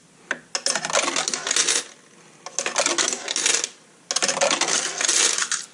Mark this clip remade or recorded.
recorded